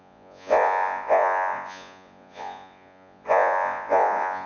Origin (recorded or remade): remade